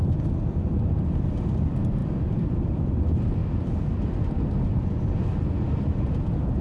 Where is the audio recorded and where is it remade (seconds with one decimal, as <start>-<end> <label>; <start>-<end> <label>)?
0.0-2.0 recorded; 2.0-2.9 remade; 2.9-6.6 recorded